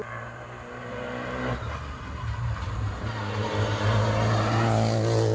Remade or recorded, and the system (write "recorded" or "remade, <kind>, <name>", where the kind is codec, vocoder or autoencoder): recorded